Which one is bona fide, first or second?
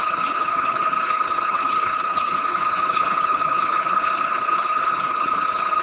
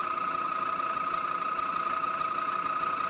second